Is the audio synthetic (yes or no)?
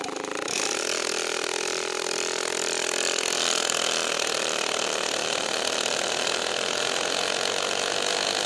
no